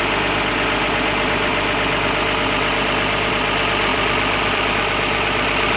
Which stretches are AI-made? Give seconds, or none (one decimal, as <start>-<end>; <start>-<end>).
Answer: 3.9-4.7